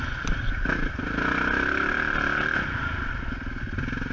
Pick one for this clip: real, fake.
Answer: real